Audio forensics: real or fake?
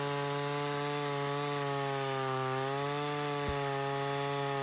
real